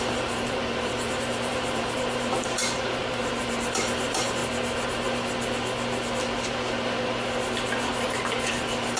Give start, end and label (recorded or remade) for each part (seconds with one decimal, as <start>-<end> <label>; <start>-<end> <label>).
0.0-4.4 remade; 4.4-8.5 recorded; 8.5-9.0 remade